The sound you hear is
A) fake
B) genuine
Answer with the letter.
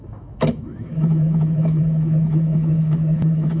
A